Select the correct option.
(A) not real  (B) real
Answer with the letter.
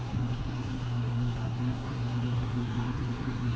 A